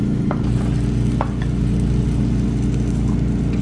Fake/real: real